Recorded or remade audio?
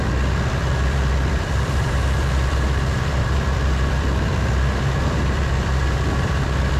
remade